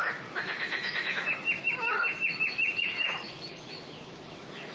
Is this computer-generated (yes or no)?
yes